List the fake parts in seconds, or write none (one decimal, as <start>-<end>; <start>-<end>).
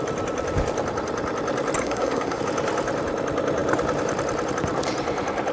1.8-2.4